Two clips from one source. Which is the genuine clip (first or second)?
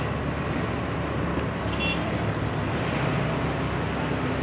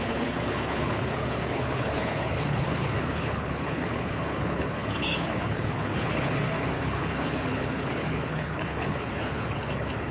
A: first